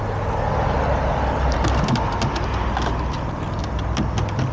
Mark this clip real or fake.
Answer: real